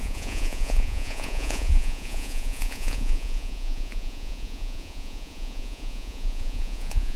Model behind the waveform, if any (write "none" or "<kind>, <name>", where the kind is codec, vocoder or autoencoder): vocoder, Vocos